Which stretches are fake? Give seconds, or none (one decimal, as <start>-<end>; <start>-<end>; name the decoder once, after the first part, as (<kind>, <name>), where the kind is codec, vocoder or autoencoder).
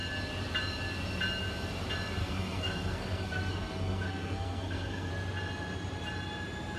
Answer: 2.2-5.1 (codec, SNAC)